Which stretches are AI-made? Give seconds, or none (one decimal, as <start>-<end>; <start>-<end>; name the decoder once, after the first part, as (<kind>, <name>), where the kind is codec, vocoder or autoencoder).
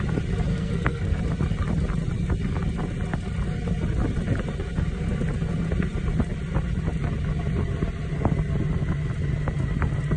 0.5-1.2 (codec, SNAC)